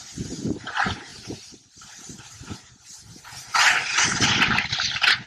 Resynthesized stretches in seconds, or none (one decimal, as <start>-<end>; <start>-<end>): none